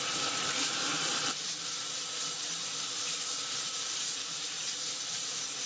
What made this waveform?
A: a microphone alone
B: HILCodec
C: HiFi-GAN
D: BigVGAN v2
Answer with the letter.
D